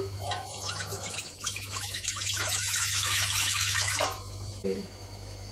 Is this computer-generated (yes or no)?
yes